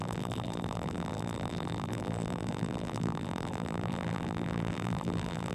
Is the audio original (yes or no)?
no